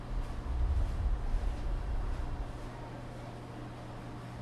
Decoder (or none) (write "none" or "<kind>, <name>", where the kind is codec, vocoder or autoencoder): none